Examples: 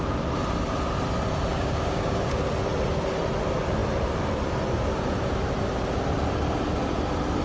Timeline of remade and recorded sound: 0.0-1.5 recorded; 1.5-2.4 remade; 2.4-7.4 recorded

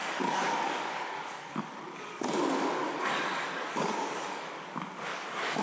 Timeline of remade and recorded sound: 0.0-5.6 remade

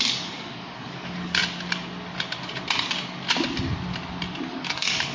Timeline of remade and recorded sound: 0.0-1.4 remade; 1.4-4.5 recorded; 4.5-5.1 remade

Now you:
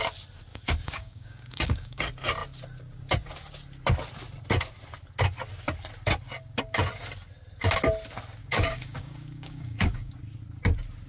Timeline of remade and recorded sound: 0.0-0.5 recorded; 0.5-2.0 remade; 2.0-8.4 recorded; 8.4-10.1 remade; 10.1-11.1 recorded